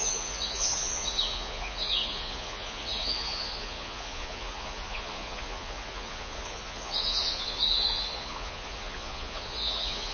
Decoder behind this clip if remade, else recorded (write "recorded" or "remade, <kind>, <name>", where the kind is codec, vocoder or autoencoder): remade, vocoder, Vocos